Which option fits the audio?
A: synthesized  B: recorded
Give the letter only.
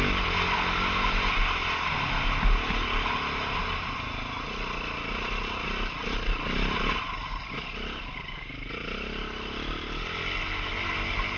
B